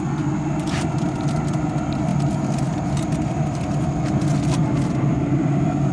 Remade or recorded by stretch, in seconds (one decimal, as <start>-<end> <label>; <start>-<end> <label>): 0.0-5.9 recorded

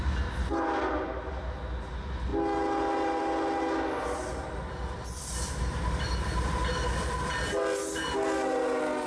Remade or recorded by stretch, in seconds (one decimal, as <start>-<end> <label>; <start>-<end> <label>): 0.0-9.1 recorded

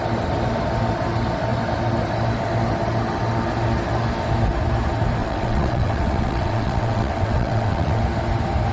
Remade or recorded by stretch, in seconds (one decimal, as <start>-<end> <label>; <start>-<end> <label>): 0.0-5.2 recorded; 5.2-8.0 remade; 8.0-8.7 recorded

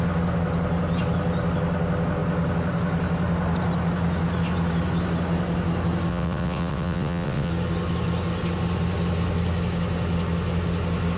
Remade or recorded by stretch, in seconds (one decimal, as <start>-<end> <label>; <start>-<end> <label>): 0.0-6.1 recorded; 6.1-7.5 remade; 7.5-11.2 recorded